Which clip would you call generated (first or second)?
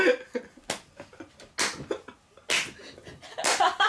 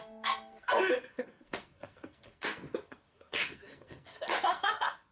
second